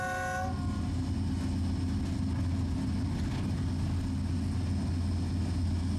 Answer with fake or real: real